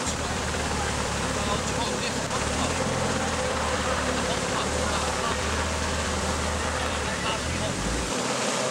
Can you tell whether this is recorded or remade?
remade